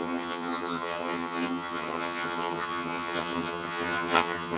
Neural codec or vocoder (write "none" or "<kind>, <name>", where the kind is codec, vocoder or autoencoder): vocoder, HiFi-GAN